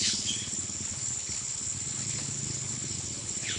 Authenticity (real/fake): fake